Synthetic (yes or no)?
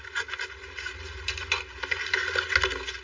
no